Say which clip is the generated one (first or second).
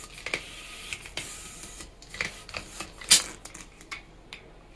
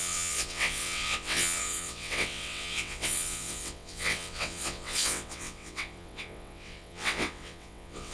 second